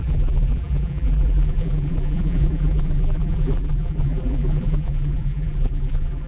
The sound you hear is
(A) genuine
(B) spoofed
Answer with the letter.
B